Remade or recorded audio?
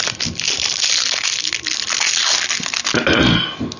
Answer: recorded